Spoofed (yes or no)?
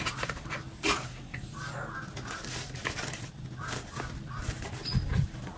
no